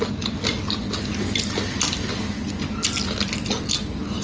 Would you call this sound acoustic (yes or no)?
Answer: yes